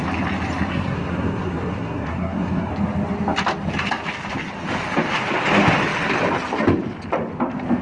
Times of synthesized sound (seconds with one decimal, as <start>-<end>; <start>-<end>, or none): 0.7-2.7